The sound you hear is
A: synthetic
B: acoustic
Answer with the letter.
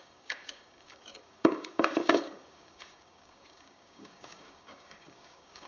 A